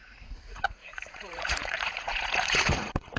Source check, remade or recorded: remade